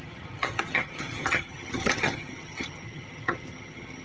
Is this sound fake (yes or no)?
yes